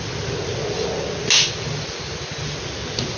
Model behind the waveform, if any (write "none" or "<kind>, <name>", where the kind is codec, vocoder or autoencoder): none